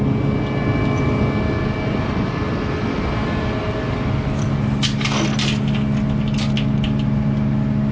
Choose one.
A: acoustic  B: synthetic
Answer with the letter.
A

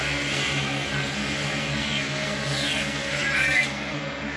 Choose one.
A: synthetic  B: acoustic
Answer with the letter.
A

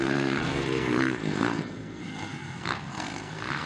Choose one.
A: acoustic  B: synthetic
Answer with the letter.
B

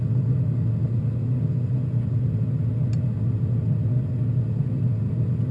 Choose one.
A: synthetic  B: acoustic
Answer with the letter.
B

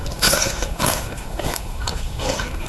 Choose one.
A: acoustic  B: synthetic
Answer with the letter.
B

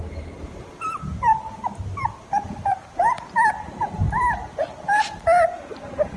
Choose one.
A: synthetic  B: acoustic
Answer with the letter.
B